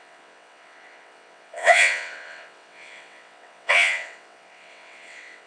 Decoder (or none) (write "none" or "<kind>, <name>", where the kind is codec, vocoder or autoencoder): vocoder, WaveNeXt